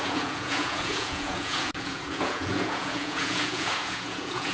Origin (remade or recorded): remade